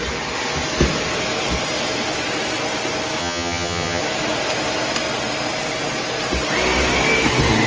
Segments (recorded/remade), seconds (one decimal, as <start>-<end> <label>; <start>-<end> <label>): 0.0-3.2 recorded; 3.2-4.0 remade; 4.0-7.7 recorded